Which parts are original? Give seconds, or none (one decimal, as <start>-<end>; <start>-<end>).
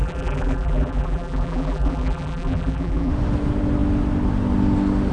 3.1-5.1